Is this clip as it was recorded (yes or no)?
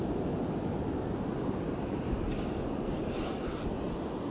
yes